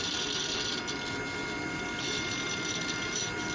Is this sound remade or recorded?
recorded